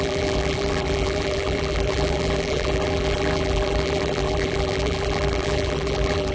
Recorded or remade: remade